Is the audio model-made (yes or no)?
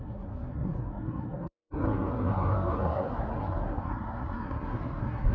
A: yes